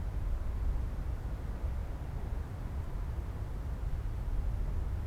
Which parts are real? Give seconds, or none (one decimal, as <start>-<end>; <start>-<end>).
0.0-5.1

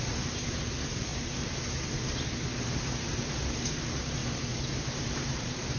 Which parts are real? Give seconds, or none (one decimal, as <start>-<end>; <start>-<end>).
2.5-3.8; 4.2-5.3

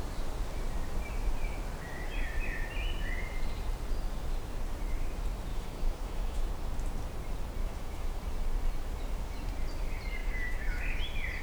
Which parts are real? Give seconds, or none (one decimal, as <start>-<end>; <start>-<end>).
0.0-5.5; 6.5-7.6; 8.2-10.2; 10.8-11.4

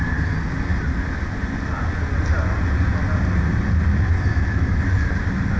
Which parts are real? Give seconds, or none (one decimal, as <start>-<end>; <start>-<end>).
0.0-3.9; 4.8-5.6

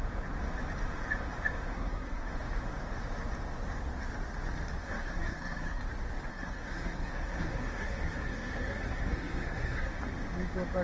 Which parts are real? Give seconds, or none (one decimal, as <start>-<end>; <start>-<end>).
0.0-1.7; 2.3-4.8; 5.8-6.3; 9.9-10.8

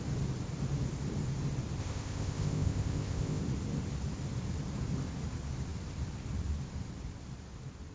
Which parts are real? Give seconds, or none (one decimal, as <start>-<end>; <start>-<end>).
0.0-1.8; 3.4-7.9